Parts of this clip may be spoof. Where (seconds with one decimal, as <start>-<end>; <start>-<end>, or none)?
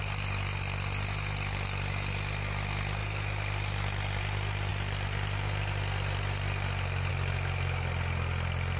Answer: none